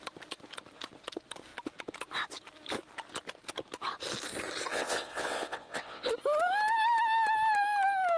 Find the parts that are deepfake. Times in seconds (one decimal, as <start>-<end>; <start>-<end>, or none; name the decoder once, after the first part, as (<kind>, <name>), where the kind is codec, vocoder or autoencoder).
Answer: 4.7-6.1 (vocoder, WaveNeXt)